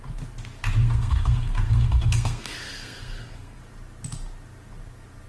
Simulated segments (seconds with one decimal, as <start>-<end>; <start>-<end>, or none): 0.8-3.6